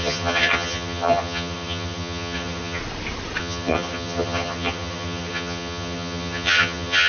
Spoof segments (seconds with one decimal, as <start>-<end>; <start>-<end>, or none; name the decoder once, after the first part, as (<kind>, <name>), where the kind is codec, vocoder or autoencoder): 0.0-2.8 (vocoder, HiFi-GAN); 3.4-7.1